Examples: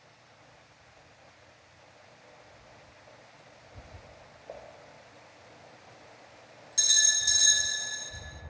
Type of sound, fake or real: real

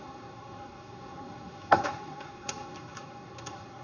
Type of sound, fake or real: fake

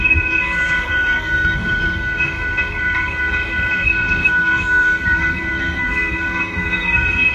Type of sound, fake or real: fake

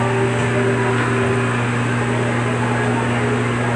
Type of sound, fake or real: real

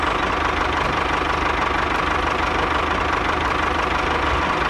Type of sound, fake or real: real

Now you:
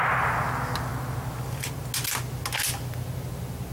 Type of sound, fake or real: real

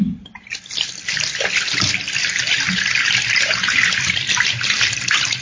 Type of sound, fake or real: real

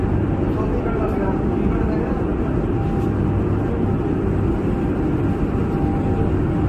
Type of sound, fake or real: real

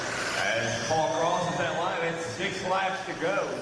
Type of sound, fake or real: real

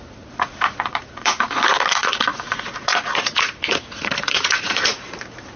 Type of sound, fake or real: fake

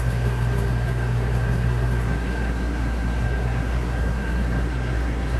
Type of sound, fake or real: fake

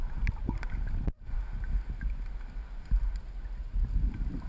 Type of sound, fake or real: real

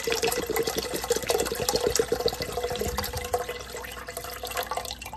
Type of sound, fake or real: real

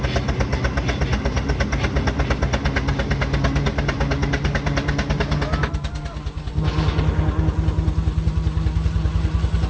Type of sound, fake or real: real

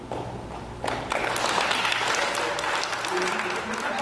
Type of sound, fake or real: real